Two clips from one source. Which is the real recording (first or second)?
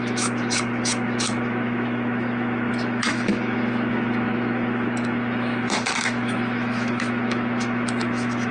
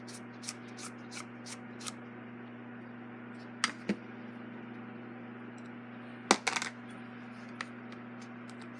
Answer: second